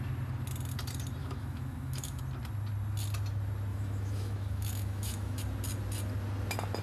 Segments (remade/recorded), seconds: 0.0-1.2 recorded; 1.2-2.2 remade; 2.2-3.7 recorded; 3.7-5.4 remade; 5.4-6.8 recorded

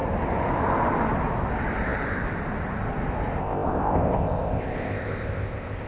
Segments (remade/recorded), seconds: 0.0-3.4 recorded; 3.4-5.9 remade

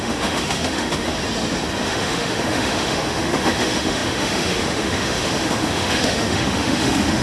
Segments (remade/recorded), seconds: 0.0-1.2 remade; 1.2-1.8 recorded; 1.8-7.2 remade

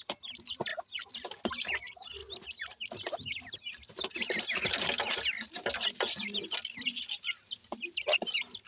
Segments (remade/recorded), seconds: 0.0-8.7 recorded

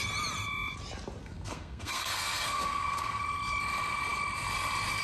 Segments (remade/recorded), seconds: 0.0-1.2 recorded; 1.2-3.2 remade; 3.2-5.0 recorded

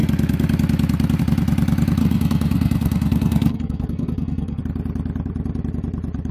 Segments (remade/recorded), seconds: 0.0-2.0 recorded; 2.0-4.6 remade; 4.6-6.3 recorded

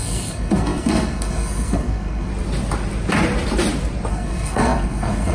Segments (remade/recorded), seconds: 0.0-2.3 remade; 2.3-4.1 recorded; 4.1-5.3 remade

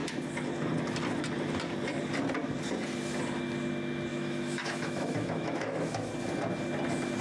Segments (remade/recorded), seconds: 0.0-4.1 recorded; 4.1-6.1 remade; 6.1-7.2 recorded